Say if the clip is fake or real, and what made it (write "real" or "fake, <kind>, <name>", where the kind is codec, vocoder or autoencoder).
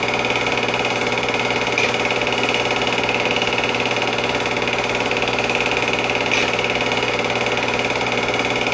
real